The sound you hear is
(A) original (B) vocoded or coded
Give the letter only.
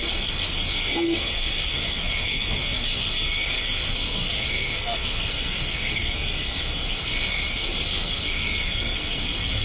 B